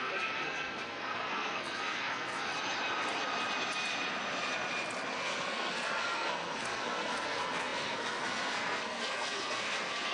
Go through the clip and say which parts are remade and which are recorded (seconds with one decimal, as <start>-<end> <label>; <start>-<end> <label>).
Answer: 0.0-2.5 remade; 2.5-5.1 recorded; 5.1-10.1 remade